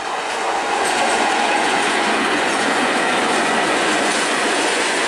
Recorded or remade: remade